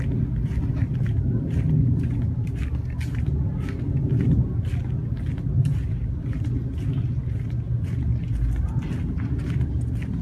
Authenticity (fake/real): real